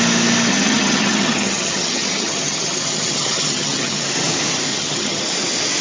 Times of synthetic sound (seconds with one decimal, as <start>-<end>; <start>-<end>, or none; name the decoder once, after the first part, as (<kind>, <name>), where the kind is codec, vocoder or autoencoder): 0.5-4.0 (vocoder, HiFi-GAN); 4.7-5.2